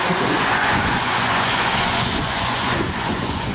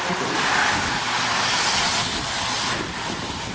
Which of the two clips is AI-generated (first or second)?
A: first